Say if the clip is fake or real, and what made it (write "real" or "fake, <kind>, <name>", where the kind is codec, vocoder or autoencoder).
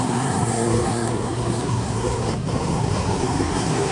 fake, codec, SNAC